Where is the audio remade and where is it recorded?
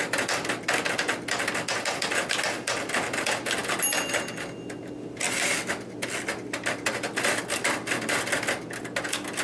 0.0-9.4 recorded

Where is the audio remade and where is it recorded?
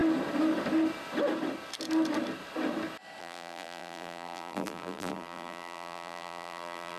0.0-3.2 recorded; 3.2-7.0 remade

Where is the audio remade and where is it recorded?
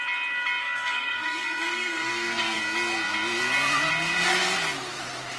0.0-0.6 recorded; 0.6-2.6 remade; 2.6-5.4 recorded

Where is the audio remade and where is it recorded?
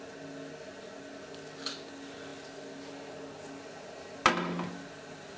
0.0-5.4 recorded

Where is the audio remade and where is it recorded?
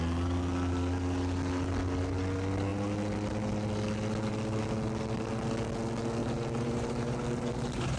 0.0-6.2 recorded; 6.2-8.0 remade